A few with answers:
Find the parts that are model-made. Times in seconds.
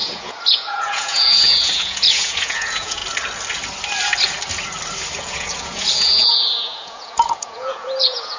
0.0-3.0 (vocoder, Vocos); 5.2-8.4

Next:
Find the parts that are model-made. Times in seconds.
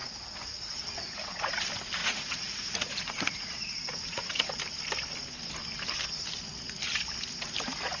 0.0-1.5 (vocoder, Vocos); 2.0-4.6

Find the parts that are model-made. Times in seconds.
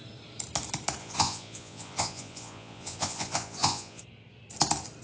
1.0-4.0 (vocoder, Vocos)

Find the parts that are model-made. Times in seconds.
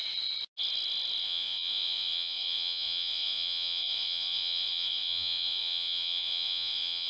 1.2-7.1 (vocoder, Vocos)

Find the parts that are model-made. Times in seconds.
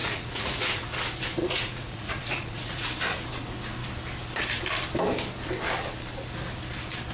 0.0-0.9 (vocoder, Vocos); 1.4-2.9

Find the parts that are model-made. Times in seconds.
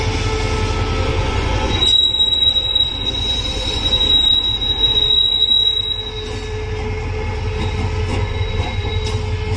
1.0-5.5 (vocoder, Vocos); 8.1-9.0